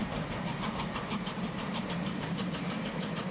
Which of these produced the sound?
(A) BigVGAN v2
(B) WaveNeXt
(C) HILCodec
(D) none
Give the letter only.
A